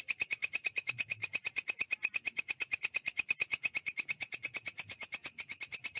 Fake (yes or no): yes